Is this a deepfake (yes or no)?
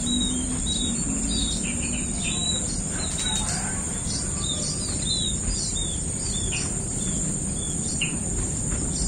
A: no